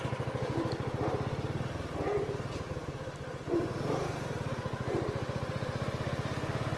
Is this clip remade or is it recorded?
remade